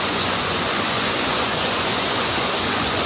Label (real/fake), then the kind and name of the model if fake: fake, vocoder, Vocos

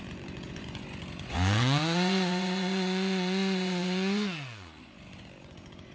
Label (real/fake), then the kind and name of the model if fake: fake, vocoder, Vocos